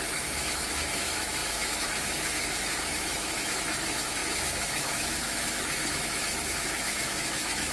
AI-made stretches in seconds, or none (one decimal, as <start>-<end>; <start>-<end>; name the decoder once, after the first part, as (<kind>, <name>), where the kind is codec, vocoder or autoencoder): 0.0-7.7 (autoencoder, DAC-VAE)